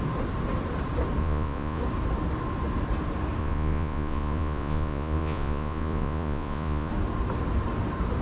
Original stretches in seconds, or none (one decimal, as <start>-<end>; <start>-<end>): 0.0-1.2; 1.8-3.4; 6.9-8.2